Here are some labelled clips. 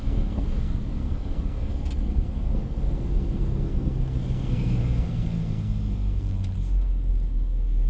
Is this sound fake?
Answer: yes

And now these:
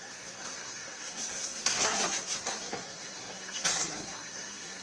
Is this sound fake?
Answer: yes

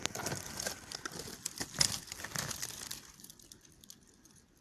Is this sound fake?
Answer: no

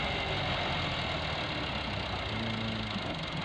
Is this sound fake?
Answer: no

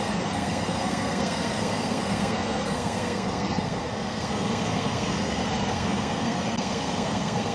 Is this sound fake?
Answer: yes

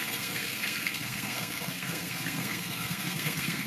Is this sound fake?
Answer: yes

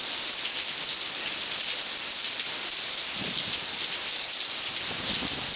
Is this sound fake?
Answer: no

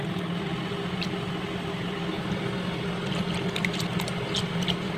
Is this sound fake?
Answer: no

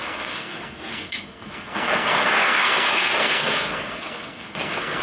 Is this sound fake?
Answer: yes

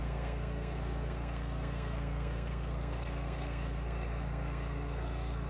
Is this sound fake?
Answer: yes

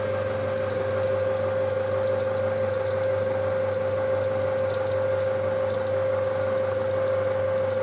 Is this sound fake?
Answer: no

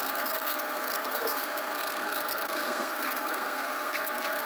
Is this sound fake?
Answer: yes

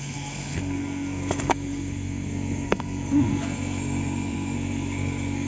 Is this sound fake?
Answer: yes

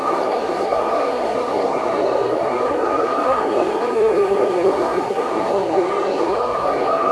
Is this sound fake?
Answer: yes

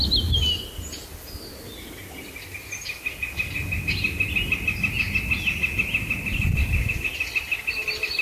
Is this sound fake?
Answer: no